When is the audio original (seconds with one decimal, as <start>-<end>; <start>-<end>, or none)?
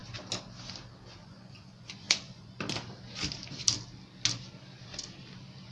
0.0-1.2; 2.5-5.7